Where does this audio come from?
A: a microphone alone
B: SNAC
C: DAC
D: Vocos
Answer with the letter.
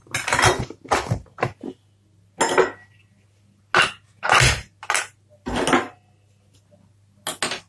A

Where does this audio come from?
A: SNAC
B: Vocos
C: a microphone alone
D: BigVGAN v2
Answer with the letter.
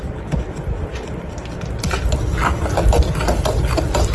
C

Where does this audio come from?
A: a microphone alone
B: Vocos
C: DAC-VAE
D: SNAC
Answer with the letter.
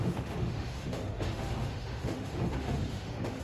C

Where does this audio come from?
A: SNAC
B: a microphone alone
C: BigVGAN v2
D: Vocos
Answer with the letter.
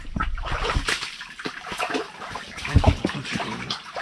C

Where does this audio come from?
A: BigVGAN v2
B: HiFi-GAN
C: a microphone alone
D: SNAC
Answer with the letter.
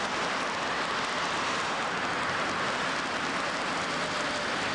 C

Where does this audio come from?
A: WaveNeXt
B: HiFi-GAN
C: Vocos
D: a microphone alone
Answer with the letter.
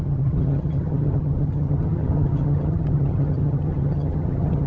B